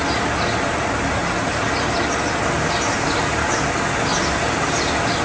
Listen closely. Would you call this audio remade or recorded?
recorded